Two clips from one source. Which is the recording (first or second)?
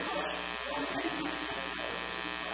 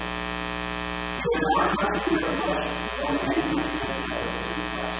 second